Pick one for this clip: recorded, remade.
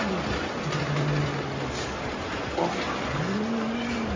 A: recorded